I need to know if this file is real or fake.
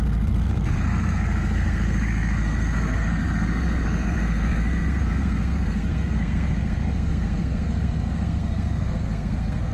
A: fake